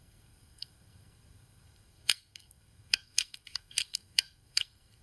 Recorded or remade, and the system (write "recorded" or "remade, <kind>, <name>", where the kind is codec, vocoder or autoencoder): remade, codec, SNAC